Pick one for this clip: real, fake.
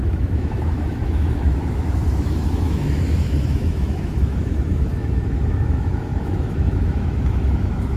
fake